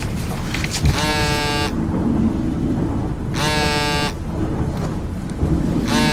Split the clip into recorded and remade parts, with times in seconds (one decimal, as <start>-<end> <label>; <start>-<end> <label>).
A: 0.0-6.1 recorded